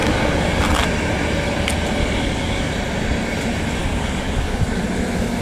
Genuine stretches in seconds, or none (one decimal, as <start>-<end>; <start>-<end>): 0.6-2.0; 2.7-3.8; 4.8-5.4